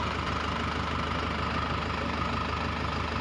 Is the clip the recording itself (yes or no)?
yes